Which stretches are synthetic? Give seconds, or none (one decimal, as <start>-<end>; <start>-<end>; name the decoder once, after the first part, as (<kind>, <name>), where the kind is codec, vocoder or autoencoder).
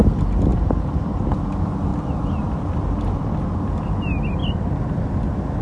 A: 0.5-1.4 (vocoder, BigVGAN v2); 1.9-2.6; 4.4-5.0